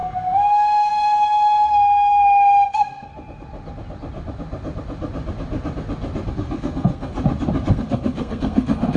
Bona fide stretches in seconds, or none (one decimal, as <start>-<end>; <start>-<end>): 3.1-6.3; 7.1-7.7